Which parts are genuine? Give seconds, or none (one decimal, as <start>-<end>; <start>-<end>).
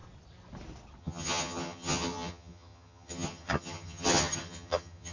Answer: 0.0-1.0